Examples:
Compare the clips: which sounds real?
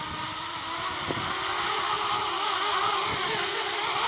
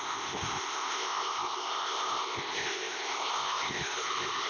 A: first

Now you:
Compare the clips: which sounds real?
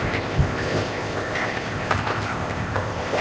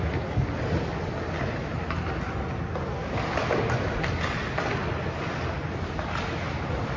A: second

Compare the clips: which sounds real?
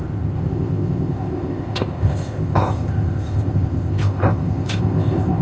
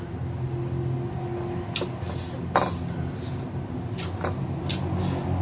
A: second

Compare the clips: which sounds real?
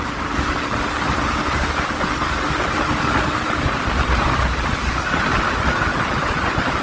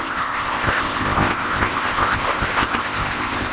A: first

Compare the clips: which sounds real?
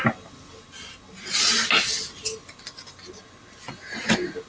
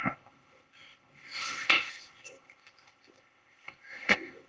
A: first